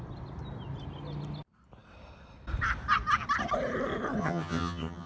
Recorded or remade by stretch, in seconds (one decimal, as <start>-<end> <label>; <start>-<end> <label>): 0.0-4.2 recorded; 4.2-5.1 remade